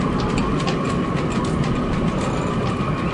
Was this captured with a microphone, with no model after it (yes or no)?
yes